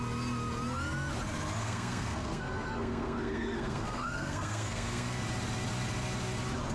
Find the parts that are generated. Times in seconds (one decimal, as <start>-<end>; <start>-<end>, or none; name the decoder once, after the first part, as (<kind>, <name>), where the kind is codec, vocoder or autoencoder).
1.6-5.2 (codec, SNAC)